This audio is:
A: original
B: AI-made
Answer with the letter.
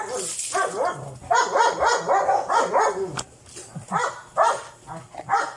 A